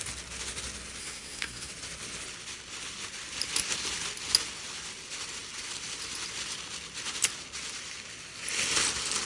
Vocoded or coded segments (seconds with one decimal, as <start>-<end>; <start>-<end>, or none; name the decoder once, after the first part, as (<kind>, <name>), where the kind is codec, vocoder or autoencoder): 1.0-1.7 (codec, SNAC)